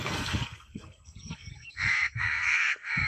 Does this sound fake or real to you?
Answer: fake